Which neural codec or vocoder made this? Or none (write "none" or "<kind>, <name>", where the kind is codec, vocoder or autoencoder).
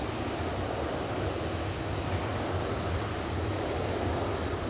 none